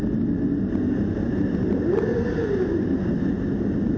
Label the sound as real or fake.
real